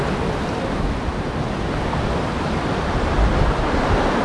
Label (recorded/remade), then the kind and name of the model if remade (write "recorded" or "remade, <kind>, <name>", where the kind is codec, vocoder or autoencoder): recorded